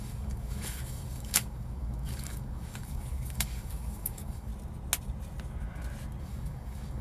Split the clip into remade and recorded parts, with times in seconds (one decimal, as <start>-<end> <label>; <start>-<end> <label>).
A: 0.0-4.5 remade; 4.5-6.2 recorded; 6.2-7.0 remade